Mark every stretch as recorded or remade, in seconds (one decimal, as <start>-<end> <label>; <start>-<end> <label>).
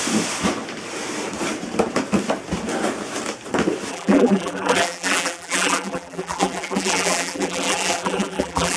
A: 0.0-3.9 recorded; 3.9-8.8 remade